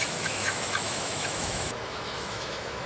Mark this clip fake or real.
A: fake